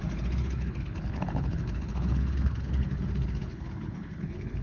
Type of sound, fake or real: fake